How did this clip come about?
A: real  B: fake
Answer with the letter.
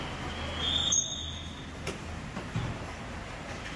A